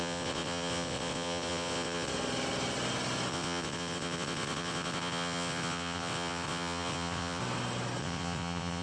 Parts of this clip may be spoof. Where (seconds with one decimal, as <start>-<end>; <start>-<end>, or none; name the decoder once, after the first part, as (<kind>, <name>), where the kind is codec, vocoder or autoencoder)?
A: 0.0-2.1 (vocoder, WaveNeXt); 3.3-7.4; 8.0-8.8